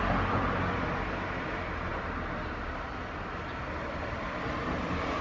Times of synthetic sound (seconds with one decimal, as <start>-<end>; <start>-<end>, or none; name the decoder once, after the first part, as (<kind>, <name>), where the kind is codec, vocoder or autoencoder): none